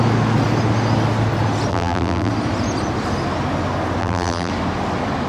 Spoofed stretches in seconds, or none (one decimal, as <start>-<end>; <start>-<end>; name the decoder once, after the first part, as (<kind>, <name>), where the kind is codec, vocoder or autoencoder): 1.7-2.3 (vocoder, BigVGAN v2); 4.0-4.5

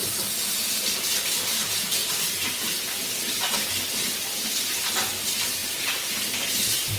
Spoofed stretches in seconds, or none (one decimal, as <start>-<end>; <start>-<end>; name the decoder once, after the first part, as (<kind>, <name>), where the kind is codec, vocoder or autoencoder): 5.6-6.5 (vocoder, BigVGAN v2)

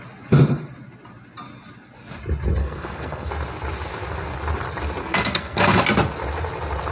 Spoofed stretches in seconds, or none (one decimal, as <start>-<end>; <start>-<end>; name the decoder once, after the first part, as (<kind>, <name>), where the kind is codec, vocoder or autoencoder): 2.6-3.3 (codec, SNAC); 5.0-5.8

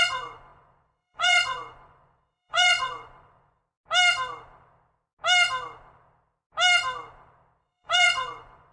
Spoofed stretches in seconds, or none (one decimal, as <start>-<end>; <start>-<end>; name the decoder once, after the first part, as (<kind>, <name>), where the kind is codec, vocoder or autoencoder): 0.0-3.6 (vocoder, Vocos); 7.6-8.7

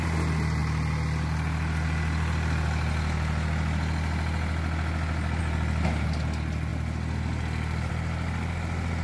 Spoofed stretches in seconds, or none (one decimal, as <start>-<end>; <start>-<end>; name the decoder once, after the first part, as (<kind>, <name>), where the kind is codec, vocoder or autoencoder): none

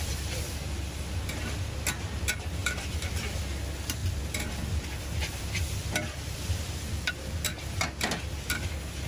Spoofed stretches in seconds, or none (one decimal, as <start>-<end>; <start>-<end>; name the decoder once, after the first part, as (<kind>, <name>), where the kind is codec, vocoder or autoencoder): 2.6-3.4 (vocoder, BigVGAN v2); 4.0-7.1

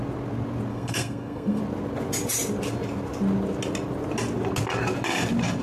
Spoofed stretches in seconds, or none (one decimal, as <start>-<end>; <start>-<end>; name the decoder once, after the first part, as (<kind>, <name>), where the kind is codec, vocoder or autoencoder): 0.7-1.6 (codec, SNAC)